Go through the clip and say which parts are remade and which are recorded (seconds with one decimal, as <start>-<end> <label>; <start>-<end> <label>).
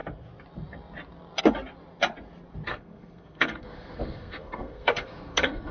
0.0-2.7 recorded; 2.7-5.7 remade